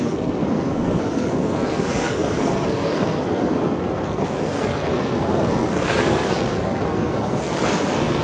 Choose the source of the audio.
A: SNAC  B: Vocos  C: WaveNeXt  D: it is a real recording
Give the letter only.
A